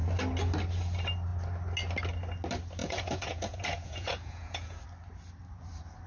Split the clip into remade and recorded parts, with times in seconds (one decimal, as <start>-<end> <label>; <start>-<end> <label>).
0.0-2.8 recorded; 2.8-4.8 remade; 4.8-6.1 recorded